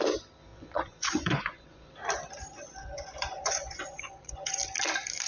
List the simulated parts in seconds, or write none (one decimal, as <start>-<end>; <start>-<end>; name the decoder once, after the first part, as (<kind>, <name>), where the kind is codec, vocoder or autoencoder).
0.5-1.9 (vocoder, Vocos); 2.8-4.6